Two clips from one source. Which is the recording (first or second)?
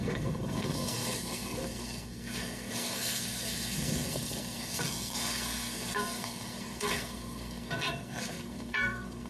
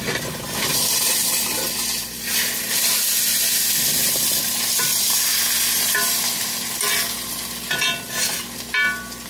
second